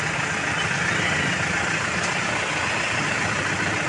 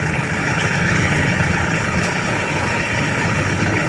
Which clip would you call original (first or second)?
first